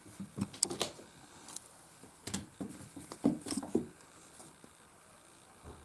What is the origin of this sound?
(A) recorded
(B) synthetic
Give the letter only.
A